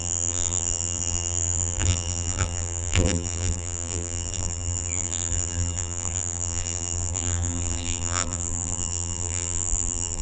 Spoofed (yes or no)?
yes